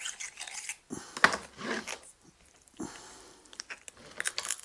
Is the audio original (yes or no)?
yes